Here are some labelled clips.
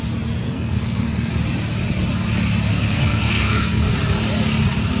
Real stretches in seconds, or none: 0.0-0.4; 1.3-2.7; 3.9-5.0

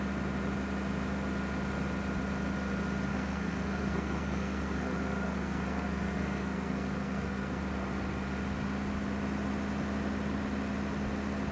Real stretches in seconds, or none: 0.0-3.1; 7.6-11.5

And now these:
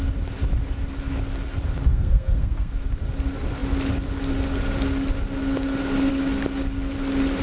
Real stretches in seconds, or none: 0.0-1.9; 2.7-7.4

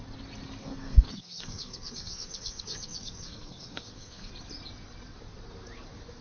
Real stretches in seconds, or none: 0.0-0.6; 4.3-6.2

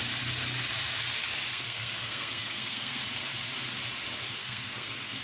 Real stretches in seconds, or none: 0.0-1.5; 3.0-4.4

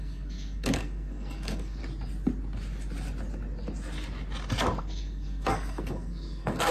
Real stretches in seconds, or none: 1.8-4.8

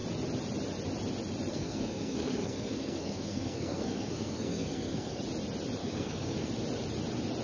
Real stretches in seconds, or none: 0.0-1.5; 5.2-5.8; 6.5-7.4

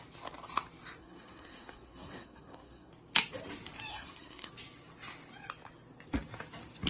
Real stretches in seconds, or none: 0.0-1.0; 2.9-3.9; 4.5-6.9